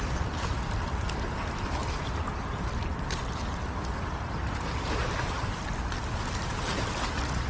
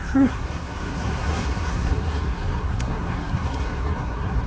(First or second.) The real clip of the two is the first